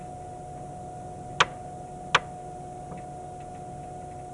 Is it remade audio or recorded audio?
recorded